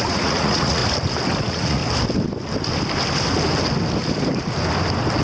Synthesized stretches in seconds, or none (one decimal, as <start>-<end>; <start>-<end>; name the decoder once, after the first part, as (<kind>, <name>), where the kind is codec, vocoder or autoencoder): 0.0-0.8 (vocoder, Vocos); 1.4-1.8